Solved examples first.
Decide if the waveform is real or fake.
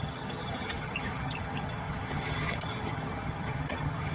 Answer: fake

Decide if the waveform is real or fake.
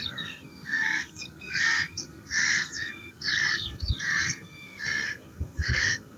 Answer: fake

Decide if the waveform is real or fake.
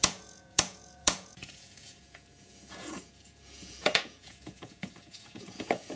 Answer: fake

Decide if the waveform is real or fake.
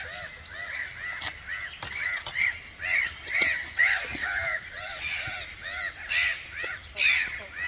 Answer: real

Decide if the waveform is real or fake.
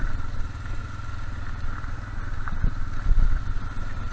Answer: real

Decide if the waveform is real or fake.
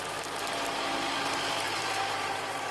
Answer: real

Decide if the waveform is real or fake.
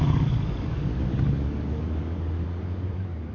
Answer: fake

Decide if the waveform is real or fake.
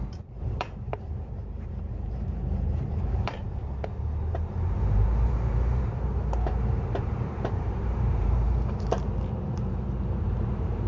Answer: fake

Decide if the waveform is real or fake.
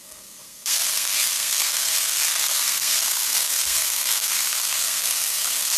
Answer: fake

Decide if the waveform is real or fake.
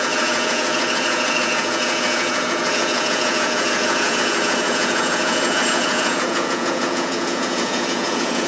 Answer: fake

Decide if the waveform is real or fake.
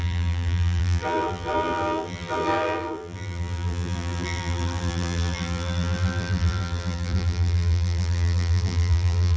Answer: fake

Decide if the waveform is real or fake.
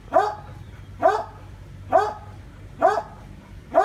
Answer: real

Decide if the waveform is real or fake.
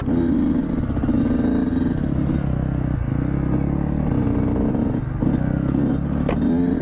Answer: real